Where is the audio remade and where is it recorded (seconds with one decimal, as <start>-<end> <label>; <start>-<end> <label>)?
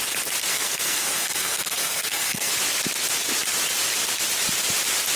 0.0-0.5 recorded; 0.5-2.5 remade; 2.5-5.2 recorded